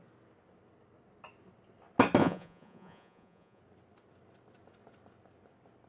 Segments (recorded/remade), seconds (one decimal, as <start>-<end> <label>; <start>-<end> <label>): 0.0-2.2 recorded; 2.2-3.6 remade; 3.6-5.9 recorded